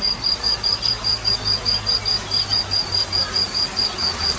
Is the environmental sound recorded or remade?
recorded